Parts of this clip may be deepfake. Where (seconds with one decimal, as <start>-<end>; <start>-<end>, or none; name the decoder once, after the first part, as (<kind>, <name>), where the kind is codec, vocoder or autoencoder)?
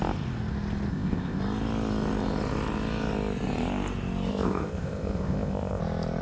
0.9-1.4 (codec, ZipCodec); 4.3-5.8